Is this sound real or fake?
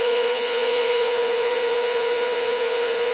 fake